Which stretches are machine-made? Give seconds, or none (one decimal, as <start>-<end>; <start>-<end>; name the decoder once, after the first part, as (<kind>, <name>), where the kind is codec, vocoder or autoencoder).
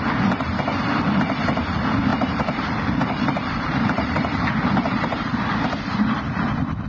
2.1-6.2 (vocoder, BigVGAN v2)